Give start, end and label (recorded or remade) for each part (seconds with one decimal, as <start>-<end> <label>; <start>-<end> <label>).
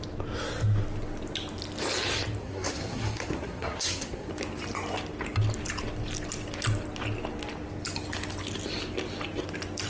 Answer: 0.0-2.4 recorded; 2.4-4.3 remade; 4.3-9.9 recorded